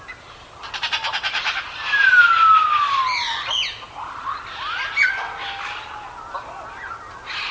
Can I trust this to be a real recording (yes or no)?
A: yes